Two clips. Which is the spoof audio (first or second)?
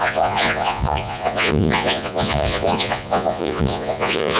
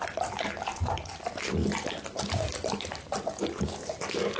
first